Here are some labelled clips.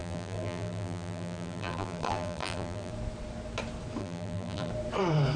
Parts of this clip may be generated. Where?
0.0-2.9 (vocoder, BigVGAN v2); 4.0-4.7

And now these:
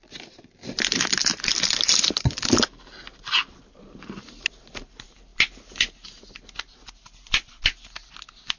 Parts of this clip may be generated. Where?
none

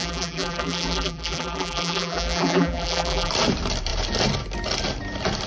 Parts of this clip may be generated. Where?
0.0-3.3 (vocoder, BigVGAN v2)